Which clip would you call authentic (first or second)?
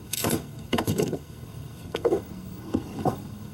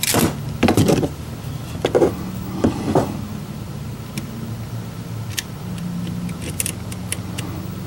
second